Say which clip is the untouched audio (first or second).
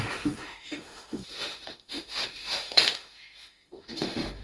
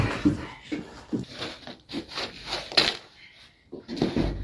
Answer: second